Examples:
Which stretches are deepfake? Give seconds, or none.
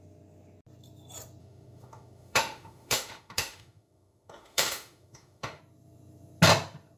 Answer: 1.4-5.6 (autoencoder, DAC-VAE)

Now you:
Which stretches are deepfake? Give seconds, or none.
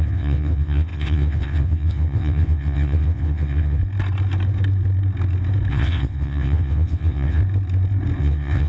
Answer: 0.0-3.8 (vocoder, WaveNeXt); 5.7-7.4; 8.2-8.7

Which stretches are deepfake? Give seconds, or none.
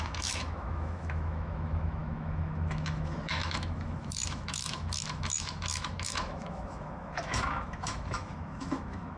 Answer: 0.0-9.2 (autoencoder, DAC-VAE)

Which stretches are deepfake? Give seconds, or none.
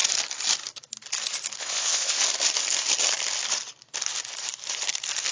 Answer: 1.6-2.2 (codec, ZipCodec)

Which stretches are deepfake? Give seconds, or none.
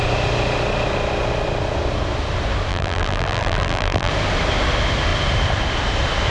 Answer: 2.7-4.1 (vocoder, BigVGAN v2)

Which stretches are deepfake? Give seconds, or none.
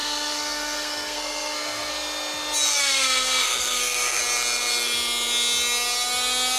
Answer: 0.0-1.9 (codec, SNAC); 2.8-4.2